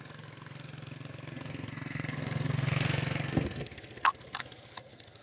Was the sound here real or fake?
fake